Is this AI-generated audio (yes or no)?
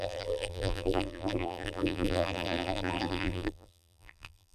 yes